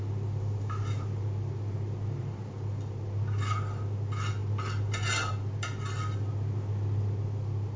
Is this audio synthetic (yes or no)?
no